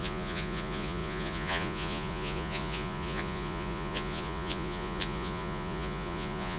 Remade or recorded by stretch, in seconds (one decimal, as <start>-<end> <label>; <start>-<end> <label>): 0.0-6.6 remade